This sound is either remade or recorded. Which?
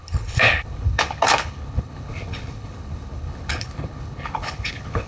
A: remade